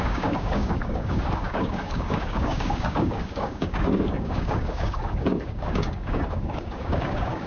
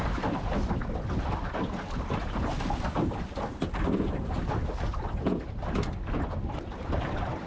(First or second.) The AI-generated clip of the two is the first